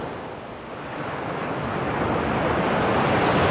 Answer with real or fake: real